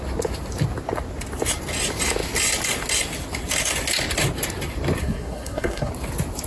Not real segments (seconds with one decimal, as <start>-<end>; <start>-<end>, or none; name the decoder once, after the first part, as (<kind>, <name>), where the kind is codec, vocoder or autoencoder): 5.0-5.9 (codec, SNAC)